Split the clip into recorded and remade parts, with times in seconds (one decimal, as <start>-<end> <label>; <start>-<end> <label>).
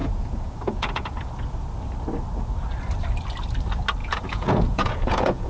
0.0-1.3 remade; 1.3-4.0 recorded; 4.0-5.5 remade